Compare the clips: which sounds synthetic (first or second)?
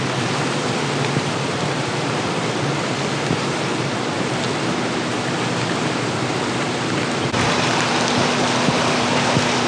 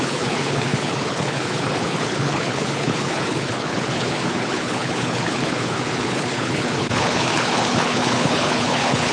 second